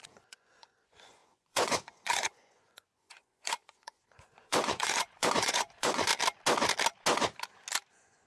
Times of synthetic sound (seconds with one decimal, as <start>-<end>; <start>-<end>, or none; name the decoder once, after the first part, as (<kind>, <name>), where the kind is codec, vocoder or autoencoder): 0.0-6.1 (vocoder, Vocos); 7.9-8.3

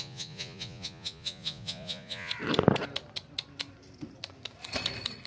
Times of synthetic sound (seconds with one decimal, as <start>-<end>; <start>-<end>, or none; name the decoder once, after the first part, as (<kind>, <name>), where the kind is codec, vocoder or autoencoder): 0.0-2.3 (vocoder, Vocos)